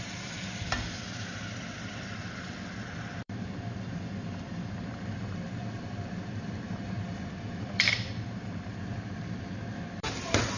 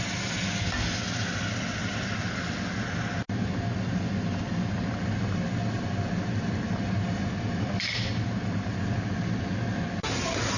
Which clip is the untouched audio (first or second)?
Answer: second